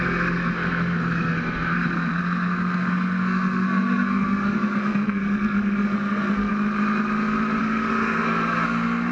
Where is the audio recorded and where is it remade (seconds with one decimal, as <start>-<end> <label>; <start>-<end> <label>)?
0.0-6.5 remade; 6.5-7.6 recorded; 7.6-9.1 remade